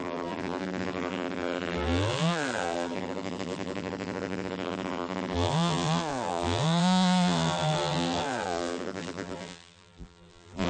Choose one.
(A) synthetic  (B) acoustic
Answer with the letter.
A